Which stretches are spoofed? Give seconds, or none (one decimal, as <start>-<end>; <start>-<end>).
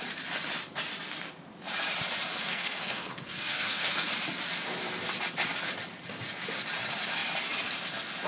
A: 2.3-4.1